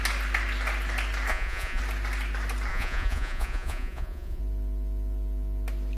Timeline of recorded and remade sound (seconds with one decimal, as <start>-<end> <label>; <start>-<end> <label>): 0.0-1.3 recorded; 1.3-1.8 remade; 1.8-2.7 recorded; 2.7-4.4 remade; 4.4-6.0 recorded